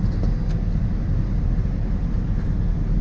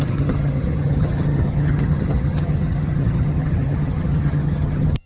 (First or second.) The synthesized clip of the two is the second